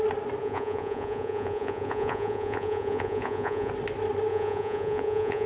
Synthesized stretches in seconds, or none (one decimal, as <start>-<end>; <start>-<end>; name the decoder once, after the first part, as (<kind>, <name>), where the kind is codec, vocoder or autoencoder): 0.4-3.7 (vocoder, Vocos); 4.3-5.5